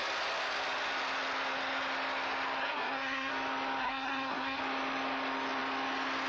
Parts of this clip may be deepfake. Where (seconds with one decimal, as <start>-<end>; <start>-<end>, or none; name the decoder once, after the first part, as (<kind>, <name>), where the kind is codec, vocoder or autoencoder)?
2.6-3.3 (codec, SNAC); 3.8-4.6

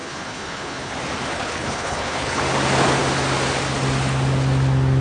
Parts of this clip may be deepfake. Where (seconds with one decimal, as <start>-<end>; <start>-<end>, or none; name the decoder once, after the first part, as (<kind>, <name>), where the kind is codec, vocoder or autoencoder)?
0.0-0.9 (codec, HILCodec); 1.3-2.4

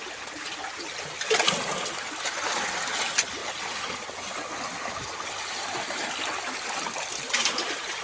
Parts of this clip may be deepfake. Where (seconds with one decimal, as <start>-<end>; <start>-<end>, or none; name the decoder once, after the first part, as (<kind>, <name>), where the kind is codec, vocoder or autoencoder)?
none